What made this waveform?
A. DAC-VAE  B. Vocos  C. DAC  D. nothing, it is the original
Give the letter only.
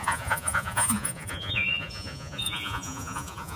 B